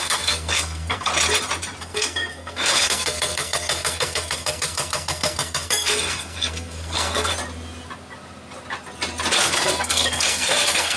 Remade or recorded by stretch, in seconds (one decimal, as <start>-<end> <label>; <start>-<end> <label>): 0.0-1.1 remade; 1.1-1.8 recorded; 1.8-7.3 remade; 7.3-9.4 recorded; 9.4-11.0 remade